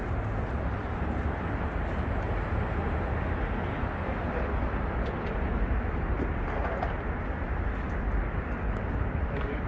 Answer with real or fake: real